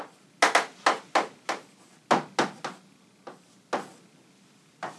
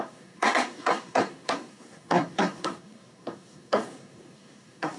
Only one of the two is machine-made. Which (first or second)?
second